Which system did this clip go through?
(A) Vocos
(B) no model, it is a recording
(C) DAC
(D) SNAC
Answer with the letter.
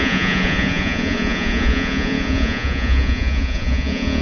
A